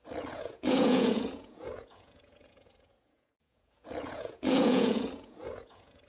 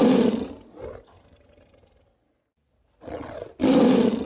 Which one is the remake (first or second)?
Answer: first